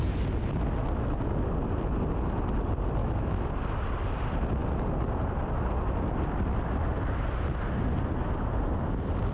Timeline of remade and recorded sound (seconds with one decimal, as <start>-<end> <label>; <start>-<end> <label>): 0.0-3.0 recorded; 3.0-3.5 remade; 3.5-9.3 recorded